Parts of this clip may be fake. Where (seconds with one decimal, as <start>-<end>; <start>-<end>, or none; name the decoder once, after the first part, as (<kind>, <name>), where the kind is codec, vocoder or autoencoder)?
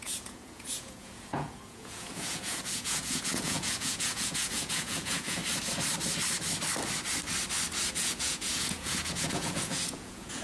0.0-5.4 (vocoder, Vocos); 7.9-10.4